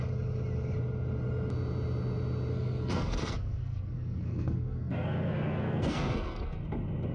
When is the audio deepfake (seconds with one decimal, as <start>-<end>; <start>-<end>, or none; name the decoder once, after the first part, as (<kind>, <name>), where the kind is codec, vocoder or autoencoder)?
2.5-6.6 (codec, SNAC)